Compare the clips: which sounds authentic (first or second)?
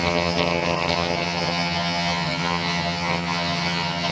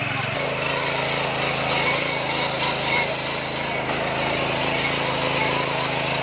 second